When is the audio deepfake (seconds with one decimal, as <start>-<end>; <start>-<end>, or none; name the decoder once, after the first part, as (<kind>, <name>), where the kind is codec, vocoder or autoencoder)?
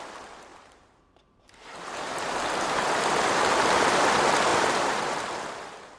0.5-4.1 (vocoder, BigVGAN v2); 4.5-5.5